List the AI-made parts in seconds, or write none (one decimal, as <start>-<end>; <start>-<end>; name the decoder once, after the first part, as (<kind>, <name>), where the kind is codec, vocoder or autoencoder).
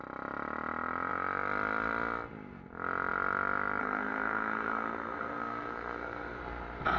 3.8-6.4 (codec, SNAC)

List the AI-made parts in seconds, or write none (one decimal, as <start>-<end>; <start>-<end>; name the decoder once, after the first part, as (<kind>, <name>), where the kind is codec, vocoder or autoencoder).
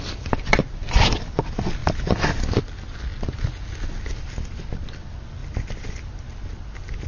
none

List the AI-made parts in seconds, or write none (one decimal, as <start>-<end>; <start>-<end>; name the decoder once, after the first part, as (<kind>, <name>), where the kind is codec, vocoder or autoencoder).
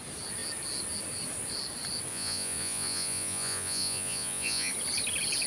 2.1-4.7 (vocoder, Vocos)